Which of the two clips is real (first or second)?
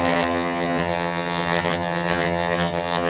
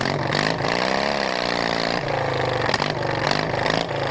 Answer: second